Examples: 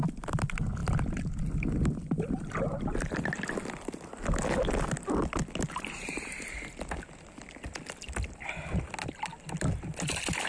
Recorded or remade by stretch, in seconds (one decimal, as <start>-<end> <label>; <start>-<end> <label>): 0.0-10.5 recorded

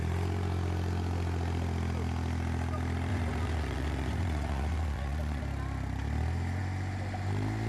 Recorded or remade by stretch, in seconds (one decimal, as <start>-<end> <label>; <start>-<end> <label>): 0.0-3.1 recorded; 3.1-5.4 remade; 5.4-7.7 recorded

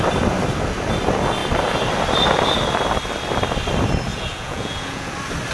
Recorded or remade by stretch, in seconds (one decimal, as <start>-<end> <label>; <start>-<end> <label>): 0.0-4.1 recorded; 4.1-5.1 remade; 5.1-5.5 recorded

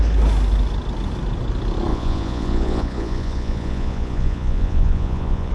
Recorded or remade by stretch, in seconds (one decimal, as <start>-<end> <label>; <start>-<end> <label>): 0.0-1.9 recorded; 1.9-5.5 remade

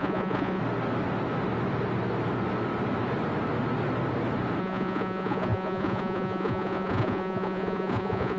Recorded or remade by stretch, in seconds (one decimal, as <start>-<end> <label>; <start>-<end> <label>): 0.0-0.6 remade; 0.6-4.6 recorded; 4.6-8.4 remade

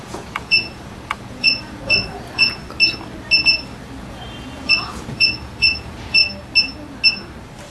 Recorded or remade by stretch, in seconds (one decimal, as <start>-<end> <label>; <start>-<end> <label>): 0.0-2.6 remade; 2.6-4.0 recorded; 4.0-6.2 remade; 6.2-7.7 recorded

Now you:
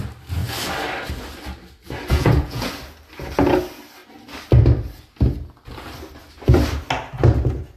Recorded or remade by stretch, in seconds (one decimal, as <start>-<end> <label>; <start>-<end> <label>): 0.0-2.1 recorded; 2.1-2.7 remade; 2.7-7.8 recorded

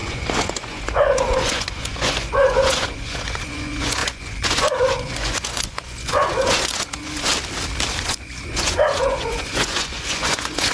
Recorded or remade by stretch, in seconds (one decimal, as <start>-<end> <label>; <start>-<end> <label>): 0.0-7.3 remade; 7.3-8.0 recorded; 8.0-10.7 remade